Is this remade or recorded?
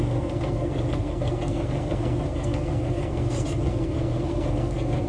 remade